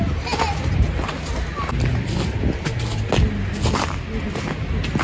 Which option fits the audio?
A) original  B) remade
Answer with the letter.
A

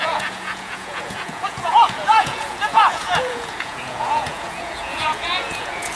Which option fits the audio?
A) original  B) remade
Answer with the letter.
B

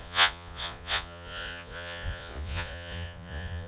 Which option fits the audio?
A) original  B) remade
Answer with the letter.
B